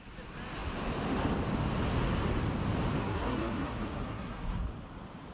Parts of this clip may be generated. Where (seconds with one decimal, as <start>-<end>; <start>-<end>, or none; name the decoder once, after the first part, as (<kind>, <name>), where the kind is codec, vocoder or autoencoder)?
3.0-4.7 (codec, SNAC)